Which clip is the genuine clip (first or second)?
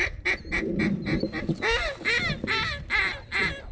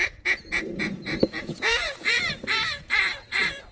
first